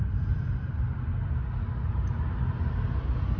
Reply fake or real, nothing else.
real